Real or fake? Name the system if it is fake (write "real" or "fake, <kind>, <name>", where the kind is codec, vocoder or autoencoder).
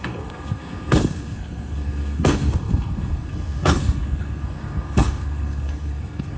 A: fake, codec, SNAC